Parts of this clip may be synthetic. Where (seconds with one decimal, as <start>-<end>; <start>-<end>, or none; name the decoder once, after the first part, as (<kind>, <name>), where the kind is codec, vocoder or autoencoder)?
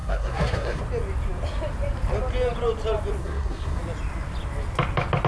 0.0-0.8 (codec, SNAC); 3.2-3.8